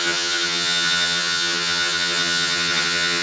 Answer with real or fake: fake